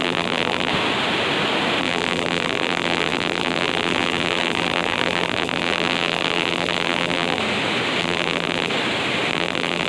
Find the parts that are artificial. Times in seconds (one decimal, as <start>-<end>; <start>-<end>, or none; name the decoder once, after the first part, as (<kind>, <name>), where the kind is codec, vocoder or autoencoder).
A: 0.0-0.7 (vocoder, BigVGAN v2); 1.8-7.4; 8.0-8.7; 9.3-9.9